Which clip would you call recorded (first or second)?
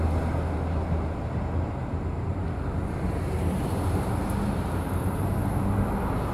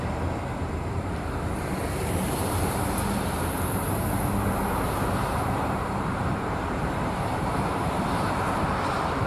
first